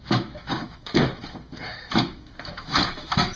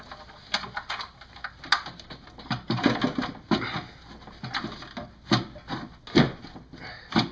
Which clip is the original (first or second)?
second